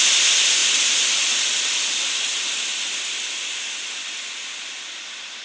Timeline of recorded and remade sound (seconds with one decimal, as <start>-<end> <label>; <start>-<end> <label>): 0.0-5.4 recorded